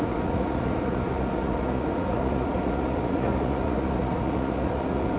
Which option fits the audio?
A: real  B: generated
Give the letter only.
B